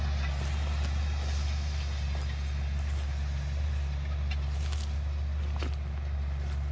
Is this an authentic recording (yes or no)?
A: yes